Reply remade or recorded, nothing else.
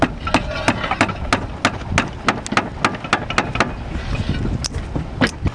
recorded